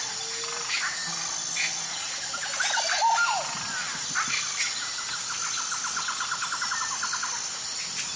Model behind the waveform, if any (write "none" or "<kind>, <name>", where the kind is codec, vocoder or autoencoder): none